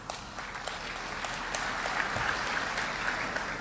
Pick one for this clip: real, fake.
real